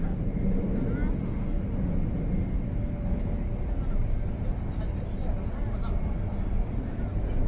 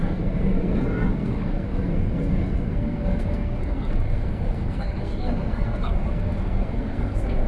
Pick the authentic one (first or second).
first